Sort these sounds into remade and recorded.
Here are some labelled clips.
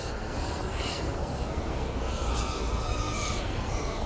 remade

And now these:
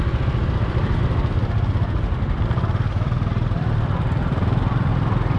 remade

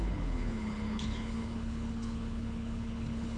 remade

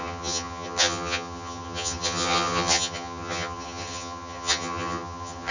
remade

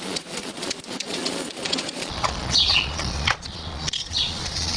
remade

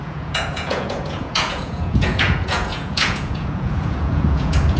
remade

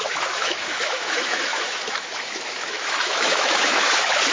remade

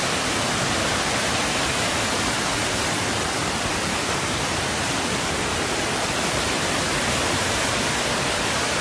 remade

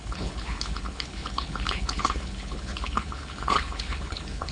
remade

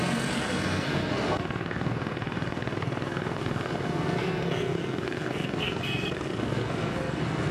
remade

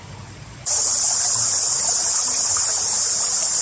recorded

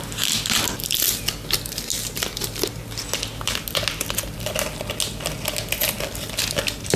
recorded